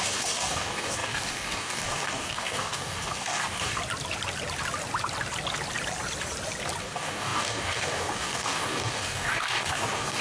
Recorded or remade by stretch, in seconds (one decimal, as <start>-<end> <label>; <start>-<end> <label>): 0.0-3.8 remade; 3.8-6.8 recorded; 6.8-10.2 remade

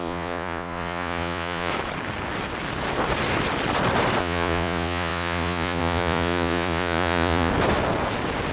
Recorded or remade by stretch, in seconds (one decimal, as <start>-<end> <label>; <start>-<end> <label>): 0.0-1.7 remade; 1.7-4.2 recorded; 4.2-7.5 remade; 7.5-8.5 recorded

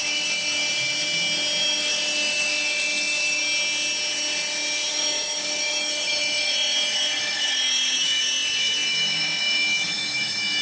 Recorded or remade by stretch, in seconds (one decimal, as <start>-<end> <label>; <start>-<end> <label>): 0.0-0.6 remade; 0.6-1.6 recorded; 1.6-3.4 remade; 3.4-4.9 recorded; 4.9-10.6 remade

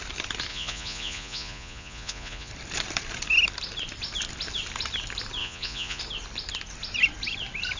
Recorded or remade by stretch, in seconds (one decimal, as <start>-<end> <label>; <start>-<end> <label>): 0.0-0.5 recorded; 0.5-2.5 remade; 2.5-5.4 recorded; 5.4-6.0 remade; 6.0-7.8 recorded

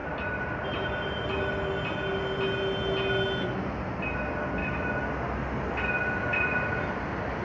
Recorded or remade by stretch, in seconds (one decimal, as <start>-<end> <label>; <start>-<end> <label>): 0.0-4.6 recorded; 4.6-5.1 remade; 5.1-7.4 recorded

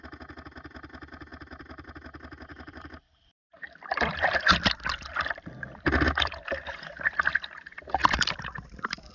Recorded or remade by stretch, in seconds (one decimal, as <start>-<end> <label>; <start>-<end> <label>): 0.0-1.3 recorded; 1.3-1.9 remade; 1.9-2.5 recorded; 2.5-6.5 remade; 6.5-8.0 recorded; 8.0-9.1 remade

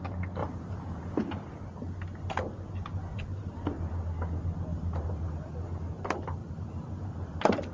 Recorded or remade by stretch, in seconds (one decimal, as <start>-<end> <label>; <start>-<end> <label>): 0.0-0.4 recorded; 0.4-1.2 remade; 1.2-2.9 recorded; 2.9-4.0 remade; 4.0-4.7 recorded; 4.7-6.0 remade; 6.0-6.4 recorded; 6.4-7.7 remade

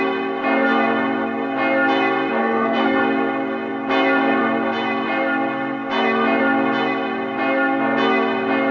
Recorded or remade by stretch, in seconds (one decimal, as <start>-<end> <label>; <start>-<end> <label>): 0.0-2.4 recorded; 2.4-3.0 remade; 3.0-8.7 recorded